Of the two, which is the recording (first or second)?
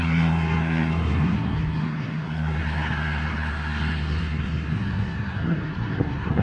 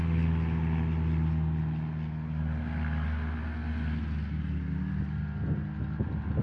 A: second